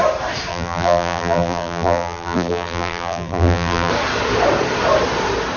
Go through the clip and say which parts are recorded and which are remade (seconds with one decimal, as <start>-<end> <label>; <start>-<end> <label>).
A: 0.0-0.5 recorded; 0.5-3.9 remade; 3.9-5.6 recorded